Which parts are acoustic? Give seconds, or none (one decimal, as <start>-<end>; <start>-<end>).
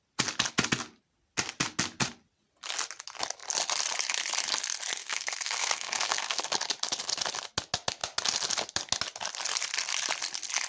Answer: 0.0-5.0; 6.4-10.7